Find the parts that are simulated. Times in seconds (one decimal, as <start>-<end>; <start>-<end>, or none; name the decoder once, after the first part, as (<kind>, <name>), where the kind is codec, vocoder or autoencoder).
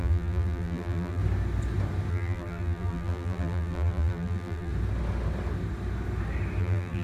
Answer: 0.0-1.2 (vocoder, BigVGAN v2); 2.1-4.7; 6.6-7.0